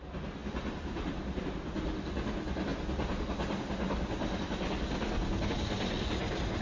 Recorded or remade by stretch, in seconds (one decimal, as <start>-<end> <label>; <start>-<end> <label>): 0.0-6.6 recorded